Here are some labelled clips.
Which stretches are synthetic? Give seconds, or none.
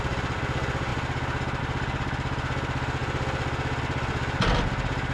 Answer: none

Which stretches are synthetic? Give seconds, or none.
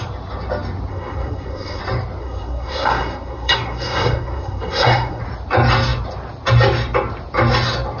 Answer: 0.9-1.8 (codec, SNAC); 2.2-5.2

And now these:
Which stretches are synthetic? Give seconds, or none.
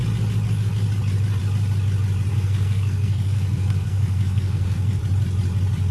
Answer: 2.3-5.0 (codec, SNAC)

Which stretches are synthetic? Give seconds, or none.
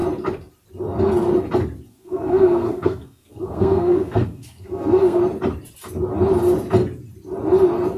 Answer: 1.9-5.2 (codec, SNAC)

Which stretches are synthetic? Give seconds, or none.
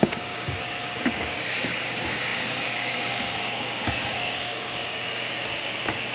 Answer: 0.0-6.1 (codec, DAC)